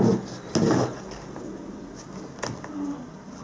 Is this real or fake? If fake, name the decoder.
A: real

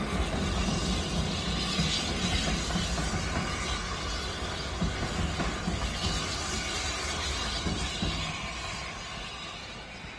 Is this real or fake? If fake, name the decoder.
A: real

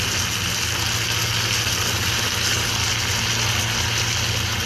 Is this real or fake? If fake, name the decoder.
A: real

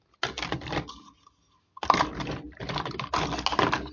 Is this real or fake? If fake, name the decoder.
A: real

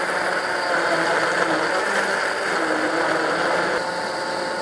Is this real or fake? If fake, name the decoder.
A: real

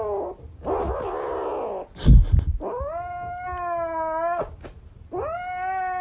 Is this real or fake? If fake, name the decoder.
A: real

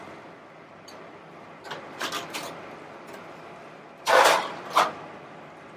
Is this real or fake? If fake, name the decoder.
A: real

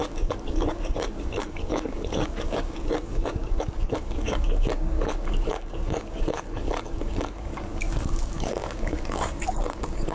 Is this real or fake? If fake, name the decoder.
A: fake, codec, DAC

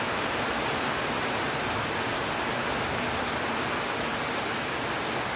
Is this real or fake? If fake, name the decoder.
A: real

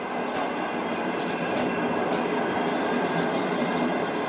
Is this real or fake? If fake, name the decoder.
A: real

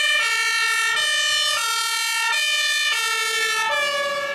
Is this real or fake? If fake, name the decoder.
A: real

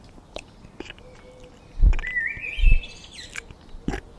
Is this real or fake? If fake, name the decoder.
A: real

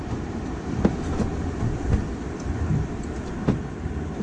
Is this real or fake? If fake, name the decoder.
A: real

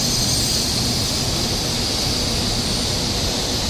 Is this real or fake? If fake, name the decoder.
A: real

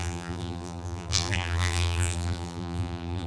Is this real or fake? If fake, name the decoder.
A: fake, vocoder, BigVGAN v2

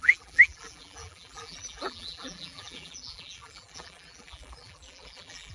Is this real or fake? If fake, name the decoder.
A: fake, vocoder, BigVGAN v2